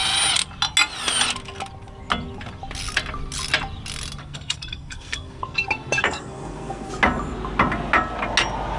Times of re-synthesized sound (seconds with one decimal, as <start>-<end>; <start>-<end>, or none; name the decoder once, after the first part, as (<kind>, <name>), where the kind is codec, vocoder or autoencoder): 4.2-6.9 (codec, SNAC)